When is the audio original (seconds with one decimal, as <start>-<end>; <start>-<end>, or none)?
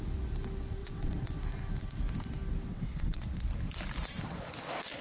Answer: 0.0-0.8; 1.4-2.7; 3.3-5.0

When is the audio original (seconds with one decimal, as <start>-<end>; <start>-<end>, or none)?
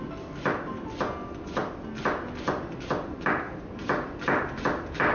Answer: 0.0-5.1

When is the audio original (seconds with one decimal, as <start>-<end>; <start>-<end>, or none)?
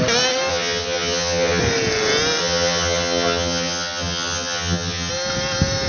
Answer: 0.0-0.5; 1.6-2.4; 5.1-5.9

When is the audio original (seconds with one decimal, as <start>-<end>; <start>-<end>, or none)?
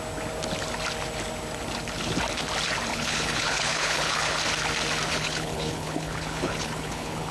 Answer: 0.0-2.9; 4.4-5.1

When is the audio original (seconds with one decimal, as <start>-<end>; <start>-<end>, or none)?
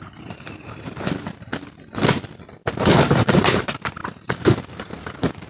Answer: 1.5-2.7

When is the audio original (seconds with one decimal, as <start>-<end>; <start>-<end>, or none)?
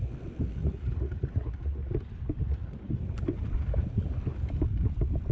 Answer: 0.0-0.6; 1.9-2.4; 2.9-5.3